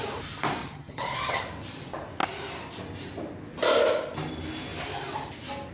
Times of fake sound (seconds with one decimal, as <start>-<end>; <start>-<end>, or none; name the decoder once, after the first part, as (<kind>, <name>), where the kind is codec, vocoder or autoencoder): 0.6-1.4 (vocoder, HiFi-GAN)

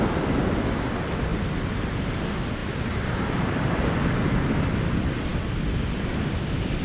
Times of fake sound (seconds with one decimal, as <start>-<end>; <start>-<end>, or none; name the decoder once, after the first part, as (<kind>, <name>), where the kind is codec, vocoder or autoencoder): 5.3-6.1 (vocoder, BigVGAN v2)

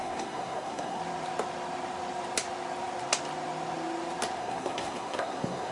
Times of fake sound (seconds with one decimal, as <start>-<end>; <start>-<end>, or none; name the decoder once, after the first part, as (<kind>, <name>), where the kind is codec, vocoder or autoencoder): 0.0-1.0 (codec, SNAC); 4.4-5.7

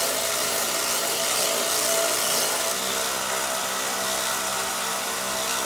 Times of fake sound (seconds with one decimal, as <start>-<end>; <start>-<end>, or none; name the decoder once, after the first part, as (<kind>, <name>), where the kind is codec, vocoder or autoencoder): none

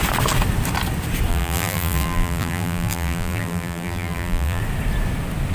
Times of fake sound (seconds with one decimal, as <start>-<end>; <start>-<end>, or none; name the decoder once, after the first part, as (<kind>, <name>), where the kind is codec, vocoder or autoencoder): 1.3-4.6 (vocoder, BigVGAN v2)

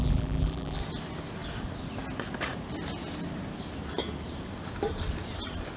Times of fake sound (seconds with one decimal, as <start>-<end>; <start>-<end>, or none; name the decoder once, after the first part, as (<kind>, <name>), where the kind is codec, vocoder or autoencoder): 0.0-0.8 (vocoder, BigVGAN v2)